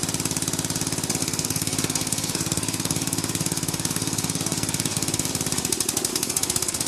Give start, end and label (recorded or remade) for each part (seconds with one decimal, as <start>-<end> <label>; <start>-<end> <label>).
0.0-1.2 recorded; 1.2-5.3 remade; 5.3-6.1 recorded; 6.1-6.9 remade